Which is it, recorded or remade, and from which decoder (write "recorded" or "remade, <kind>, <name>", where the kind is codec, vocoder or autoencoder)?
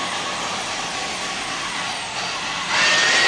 recorded